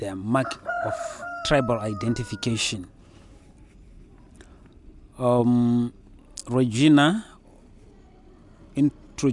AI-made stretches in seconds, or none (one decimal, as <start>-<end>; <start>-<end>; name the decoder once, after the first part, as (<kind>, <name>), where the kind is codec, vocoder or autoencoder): none